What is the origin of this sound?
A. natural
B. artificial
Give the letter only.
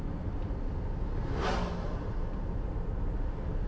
A